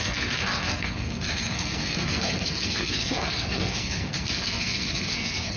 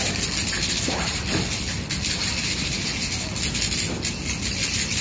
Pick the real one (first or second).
second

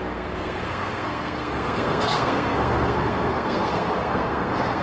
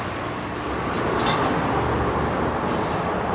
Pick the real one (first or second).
second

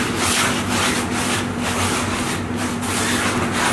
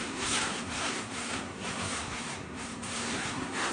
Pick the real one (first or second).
first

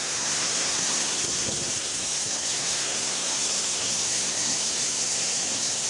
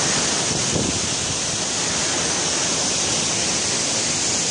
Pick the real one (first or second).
second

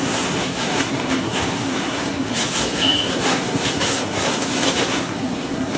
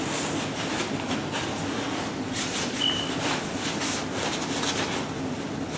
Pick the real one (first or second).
second